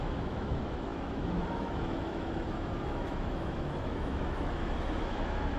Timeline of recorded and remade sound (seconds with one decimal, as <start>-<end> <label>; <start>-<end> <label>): 0.0-5.6 remade